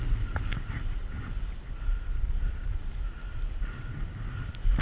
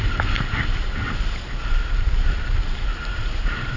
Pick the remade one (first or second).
second